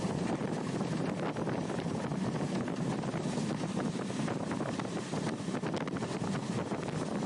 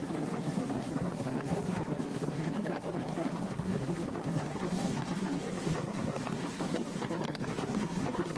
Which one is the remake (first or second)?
second